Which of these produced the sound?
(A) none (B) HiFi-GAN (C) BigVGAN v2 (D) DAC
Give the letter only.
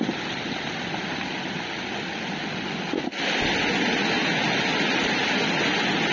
A